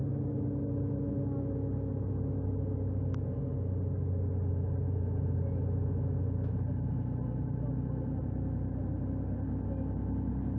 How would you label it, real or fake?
real